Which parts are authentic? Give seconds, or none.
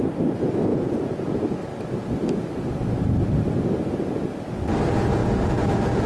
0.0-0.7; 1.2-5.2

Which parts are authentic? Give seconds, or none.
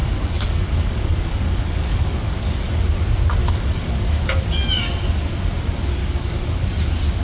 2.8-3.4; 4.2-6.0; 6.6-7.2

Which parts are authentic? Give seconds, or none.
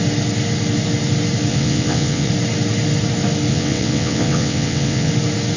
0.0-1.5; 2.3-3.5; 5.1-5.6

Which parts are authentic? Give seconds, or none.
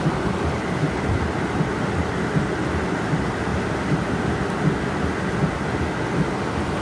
0.0-6.8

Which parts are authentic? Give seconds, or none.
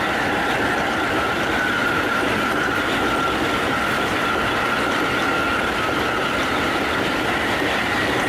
0.0-1.8; 2.8-8.3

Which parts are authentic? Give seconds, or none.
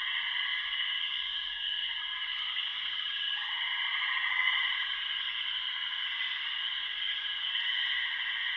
0.0-0.5; 3.4-6.8; 7.5-8.6